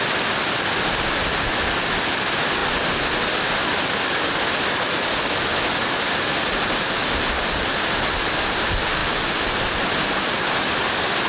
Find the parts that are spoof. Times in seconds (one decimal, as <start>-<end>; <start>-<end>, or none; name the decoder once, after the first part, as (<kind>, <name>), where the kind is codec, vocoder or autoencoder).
none